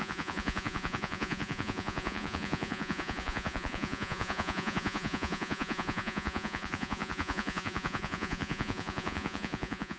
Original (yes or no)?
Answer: no